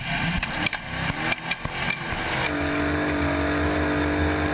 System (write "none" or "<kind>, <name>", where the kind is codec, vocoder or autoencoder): none